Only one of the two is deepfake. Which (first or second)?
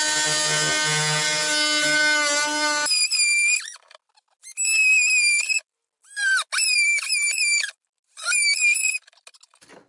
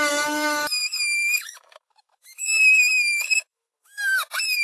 second